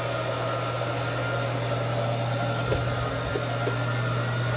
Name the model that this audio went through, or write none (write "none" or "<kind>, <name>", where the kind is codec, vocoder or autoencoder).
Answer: none